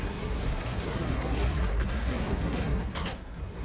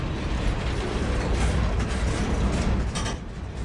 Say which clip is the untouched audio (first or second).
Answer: second